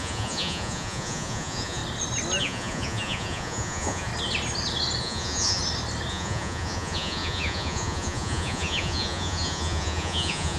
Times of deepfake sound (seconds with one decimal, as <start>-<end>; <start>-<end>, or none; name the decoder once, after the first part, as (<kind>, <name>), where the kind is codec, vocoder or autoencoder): 0.0-1.8 (vocoder, Vocos); 2.4-4.1; 5.0-5.6; 6.1-10.6